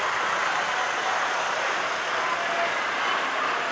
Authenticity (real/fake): real